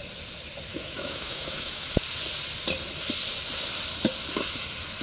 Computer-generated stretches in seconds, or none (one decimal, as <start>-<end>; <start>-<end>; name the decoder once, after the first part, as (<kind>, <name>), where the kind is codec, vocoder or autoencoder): 0.7-1.9 (autoencoder, DAC-VAE)